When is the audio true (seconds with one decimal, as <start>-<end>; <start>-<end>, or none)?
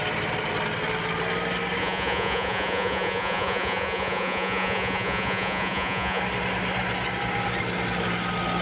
0.0-1.8; 6.2-8.6